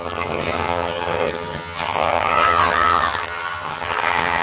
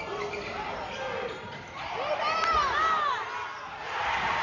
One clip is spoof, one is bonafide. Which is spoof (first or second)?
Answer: first